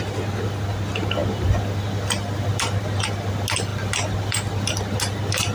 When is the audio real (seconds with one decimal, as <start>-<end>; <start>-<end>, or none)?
0.0-5.5